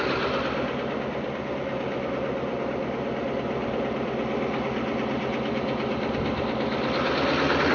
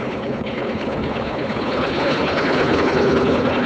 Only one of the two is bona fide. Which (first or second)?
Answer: first